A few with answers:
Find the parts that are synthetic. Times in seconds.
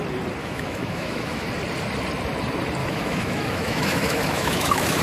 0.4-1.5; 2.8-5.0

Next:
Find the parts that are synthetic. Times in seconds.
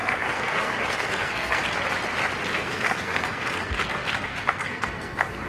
0.0-1.6; 2.5-5.5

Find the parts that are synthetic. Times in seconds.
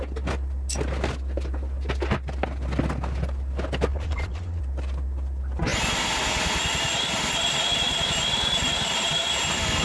3.9-4.6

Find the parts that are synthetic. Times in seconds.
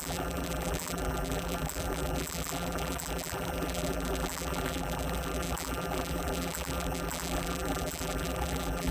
0.0-8.9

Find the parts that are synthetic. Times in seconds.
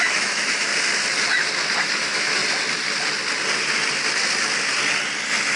0.0-0.7; 1.8-2.4